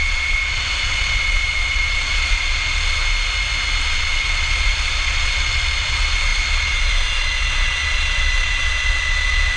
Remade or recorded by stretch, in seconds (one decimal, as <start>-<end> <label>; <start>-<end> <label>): 0.0-3.0 remade; 3.0-3.8 recorded; 3.8-9.6 remade